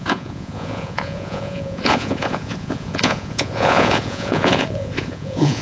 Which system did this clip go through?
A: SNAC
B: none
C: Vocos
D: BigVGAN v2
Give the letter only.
C